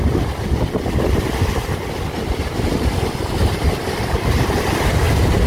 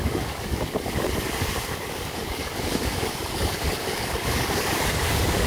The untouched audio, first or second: first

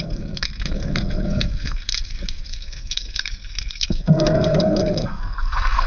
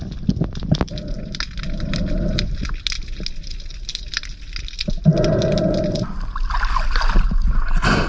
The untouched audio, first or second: second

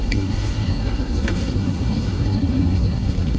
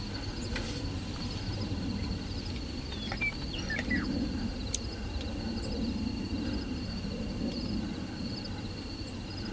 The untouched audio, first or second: second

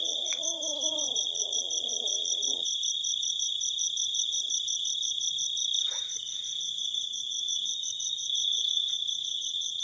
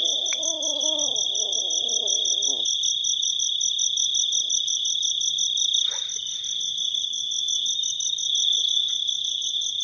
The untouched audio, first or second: second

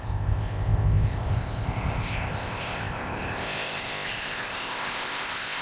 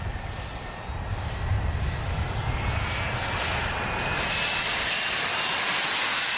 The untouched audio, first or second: second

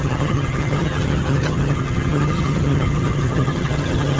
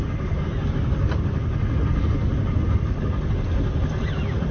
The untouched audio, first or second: second